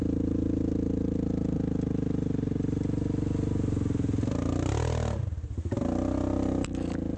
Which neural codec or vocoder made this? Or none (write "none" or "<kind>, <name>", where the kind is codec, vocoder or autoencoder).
none